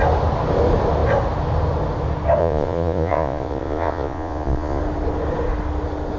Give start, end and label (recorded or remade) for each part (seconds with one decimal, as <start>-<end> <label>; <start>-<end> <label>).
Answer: 0.0-2.4 recorded; 2.4-4.8 remade; 4.8-6.2 recorded